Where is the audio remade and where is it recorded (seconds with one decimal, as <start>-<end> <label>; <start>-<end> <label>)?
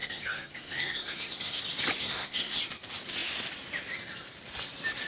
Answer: 0.0-1.6 remade; 1.6-2.0 recorded; 2.0-2.6 remade; 2.6-5.1 recorded